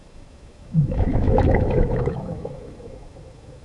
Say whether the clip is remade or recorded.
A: remade